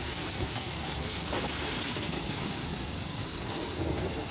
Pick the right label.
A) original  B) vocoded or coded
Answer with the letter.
B